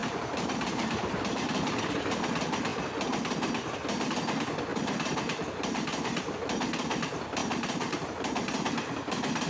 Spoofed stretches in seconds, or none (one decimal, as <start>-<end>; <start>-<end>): 0.0-2.0; 4.7-6.3; 7.4-8.0